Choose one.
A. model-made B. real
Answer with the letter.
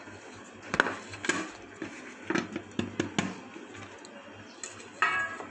B